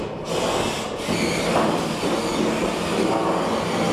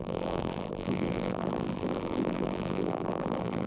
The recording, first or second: first